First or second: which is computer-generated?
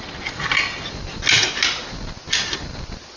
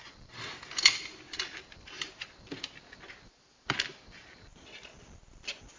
second